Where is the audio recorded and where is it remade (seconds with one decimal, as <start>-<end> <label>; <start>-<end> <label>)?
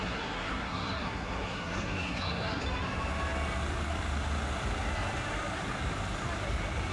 0.0-2.6 remade; 2.6-6.9 recorded